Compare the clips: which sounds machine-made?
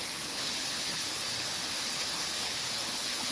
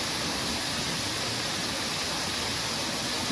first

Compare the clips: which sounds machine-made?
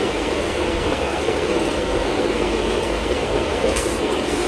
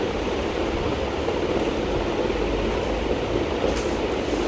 first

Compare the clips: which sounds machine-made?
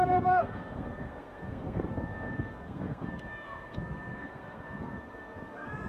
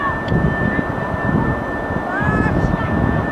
first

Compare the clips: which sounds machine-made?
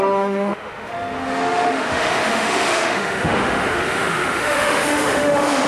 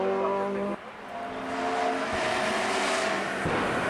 first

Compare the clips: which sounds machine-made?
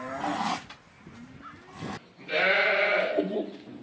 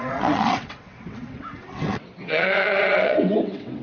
second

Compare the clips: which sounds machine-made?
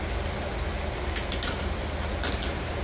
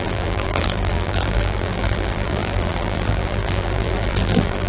second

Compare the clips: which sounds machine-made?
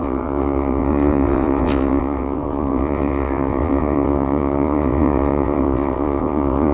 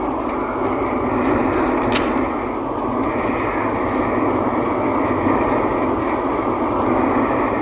first